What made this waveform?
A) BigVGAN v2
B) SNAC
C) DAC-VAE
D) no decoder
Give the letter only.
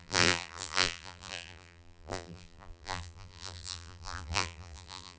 A